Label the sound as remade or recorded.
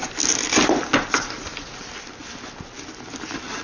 recorded